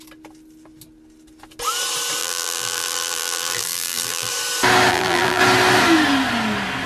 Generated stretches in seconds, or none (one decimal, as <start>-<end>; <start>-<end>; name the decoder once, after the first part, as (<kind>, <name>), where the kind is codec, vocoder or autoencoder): 2.2-4.3 (vocoder, BigVGAN v2); 4.9-5.4